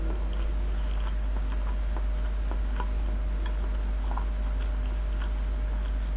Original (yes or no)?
yes